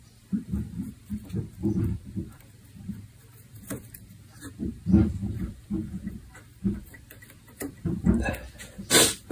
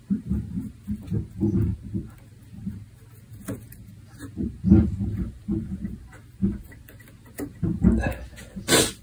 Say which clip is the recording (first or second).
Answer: second